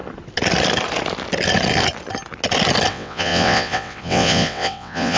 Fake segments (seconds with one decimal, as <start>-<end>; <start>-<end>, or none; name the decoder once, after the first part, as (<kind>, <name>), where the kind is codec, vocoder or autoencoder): 2.9-5.2 (vocoder, WaveNeXt)

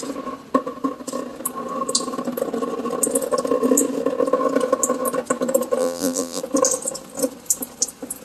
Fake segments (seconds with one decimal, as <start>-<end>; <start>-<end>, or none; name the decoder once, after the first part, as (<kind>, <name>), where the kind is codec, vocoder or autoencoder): 5.8-6.4 (vocoder, BigVGAN v2)

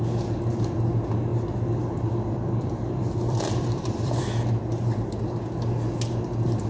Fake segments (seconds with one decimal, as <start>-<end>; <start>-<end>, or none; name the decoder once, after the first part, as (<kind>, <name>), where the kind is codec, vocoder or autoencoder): 1.3-4.2 (vocoder, BigVGAN v2)